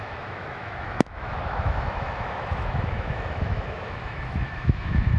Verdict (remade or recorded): remade